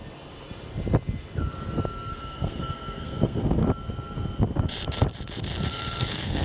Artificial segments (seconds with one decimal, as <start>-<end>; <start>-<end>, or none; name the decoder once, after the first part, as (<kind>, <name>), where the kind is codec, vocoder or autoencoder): 2.1-3.6 (codec, SNAC); 5.7-6.4